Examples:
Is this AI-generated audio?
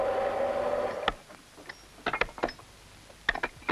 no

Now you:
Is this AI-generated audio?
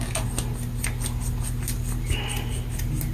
no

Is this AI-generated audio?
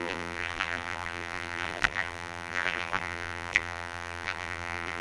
yes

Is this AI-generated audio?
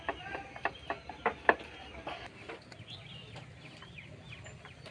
no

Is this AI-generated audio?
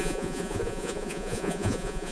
yes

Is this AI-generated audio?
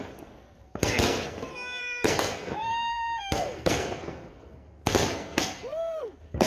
yes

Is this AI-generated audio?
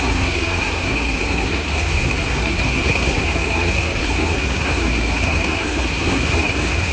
yes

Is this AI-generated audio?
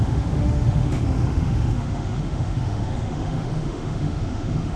yes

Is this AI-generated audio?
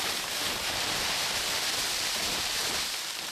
yes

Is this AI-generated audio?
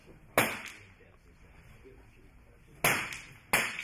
no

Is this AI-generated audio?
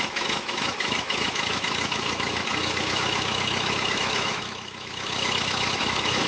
yes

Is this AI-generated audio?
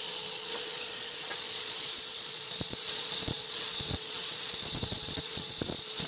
yes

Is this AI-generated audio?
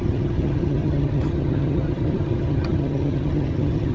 yes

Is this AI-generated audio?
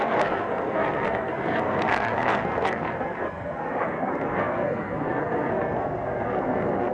yes